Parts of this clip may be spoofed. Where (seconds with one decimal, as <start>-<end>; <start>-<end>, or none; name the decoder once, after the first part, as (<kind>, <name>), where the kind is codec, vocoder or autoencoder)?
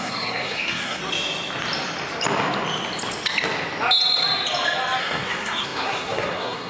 0.0-1.0 (codec, SNAC); 5.0-6.7